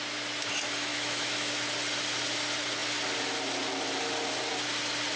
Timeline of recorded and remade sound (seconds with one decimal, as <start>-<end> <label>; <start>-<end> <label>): 0.0-0.9 recorded; 0.9-1.5 remade; 1.5-5.2 recorded